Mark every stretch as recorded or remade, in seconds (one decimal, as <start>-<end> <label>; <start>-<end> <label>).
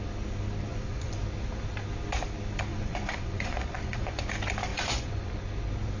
0.0-0.7 recorded; 0.7-1.2 remade; 1.2-2.7 recorded; 2.7-4.3 remade; 4.3-4.7 recorded; 4.7-5.4 remade; 5.4-6.0 recorded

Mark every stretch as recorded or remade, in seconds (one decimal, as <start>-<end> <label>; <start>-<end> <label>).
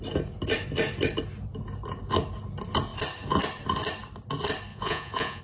0.0-4.7 recorded; 4.7-5.4 remade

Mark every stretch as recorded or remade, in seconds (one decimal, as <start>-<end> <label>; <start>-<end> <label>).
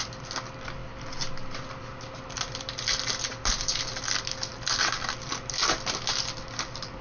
0.0-7.0 recorded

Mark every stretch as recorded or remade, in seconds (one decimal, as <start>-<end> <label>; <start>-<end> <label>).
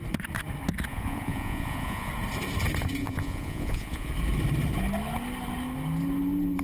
0.0-0.9 recorded; 0.9-2.1 remade; 2.1-3.0 recorded; 3.0-4.1 remade; 4.1-6.6 recorded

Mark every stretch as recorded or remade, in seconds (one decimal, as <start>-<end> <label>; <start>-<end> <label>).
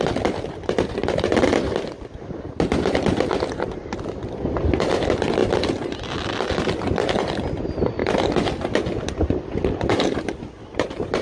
0.0-11.2 recorded